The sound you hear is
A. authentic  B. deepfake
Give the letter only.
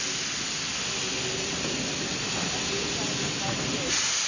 A